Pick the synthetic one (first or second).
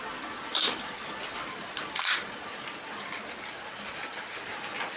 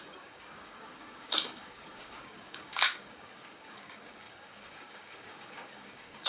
second